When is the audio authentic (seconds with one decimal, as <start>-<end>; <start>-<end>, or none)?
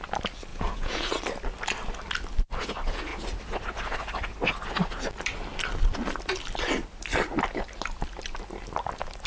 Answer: 0.0-0.5; 1.1-9.3